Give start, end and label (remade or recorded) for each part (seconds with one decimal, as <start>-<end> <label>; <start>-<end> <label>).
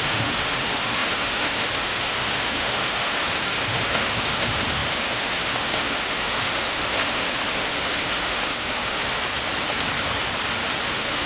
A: 0.0-9.2 remade; 9.2-10.8 recorded; 10.8-11.3 remade